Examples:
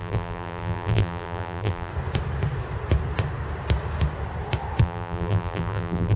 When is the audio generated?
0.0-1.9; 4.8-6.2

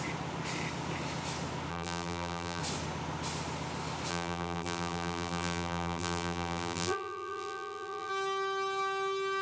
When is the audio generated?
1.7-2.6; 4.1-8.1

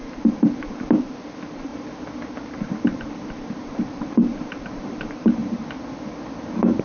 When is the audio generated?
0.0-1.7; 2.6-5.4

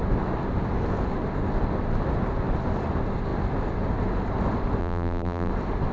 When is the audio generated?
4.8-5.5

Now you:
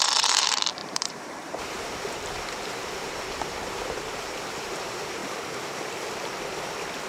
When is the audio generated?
0.0-5.2

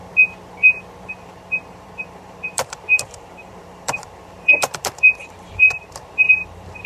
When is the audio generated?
1.1-6.9

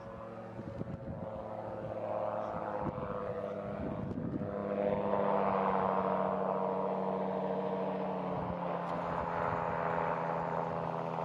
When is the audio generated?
none

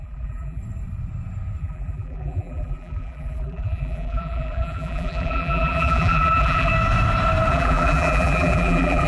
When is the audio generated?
0.0-0.6; 1.6-6.7; 7.5-9.1